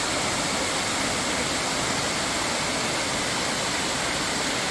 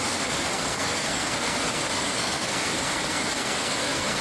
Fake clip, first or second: second